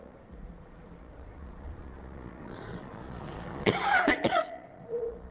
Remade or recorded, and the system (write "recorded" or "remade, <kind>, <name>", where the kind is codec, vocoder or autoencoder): remade, vocoder, Vocos